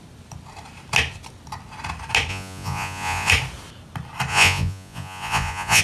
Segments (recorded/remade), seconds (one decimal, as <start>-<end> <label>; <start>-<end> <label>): 0.0-2.3 recorded; 2.3-3.3 remade; 3.3-4.3 recorded; 4.3-5.8 remade